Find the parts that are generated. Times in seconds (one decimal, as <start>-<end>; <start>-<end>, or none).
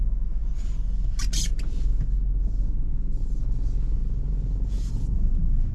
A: none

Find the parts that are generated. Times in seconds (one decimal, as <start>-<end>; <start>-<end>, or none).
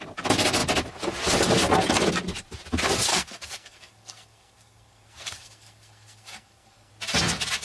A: 3.1-6.9